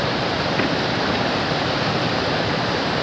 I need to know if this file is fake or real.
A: fake